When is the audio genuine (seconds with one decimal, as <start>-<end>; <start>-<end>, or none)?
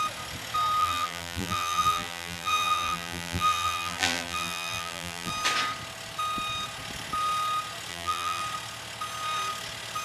0.0-0.8; 5.3-7.9; 8.4-10.0